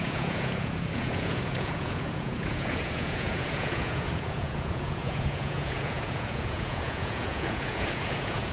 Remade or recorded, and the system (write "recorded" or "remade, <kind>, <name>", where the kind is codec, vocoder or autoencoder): remade, vocoder, Vocos